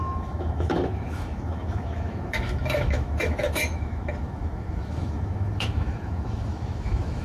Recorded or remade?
remade